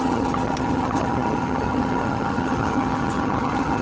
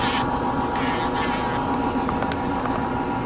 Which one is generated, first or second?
first